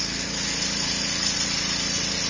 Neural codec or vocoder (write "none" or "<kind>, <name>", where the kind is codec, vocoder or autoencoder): none